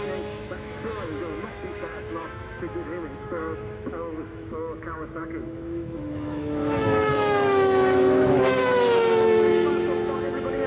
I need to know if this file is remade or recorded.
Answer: remade